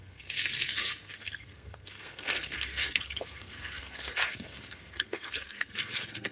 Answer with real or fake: fake